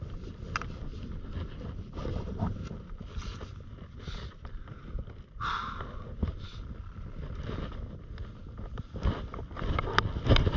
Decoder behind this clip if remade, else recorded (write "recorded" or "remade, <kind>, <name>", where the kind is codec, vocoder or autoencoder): recorded